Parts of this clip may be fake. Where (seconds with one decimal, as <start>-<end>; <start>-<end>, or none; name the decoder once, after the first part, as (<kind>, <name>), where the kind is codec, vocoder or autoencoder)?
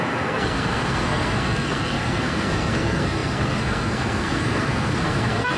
0.0-5.6 (codec, SNAC)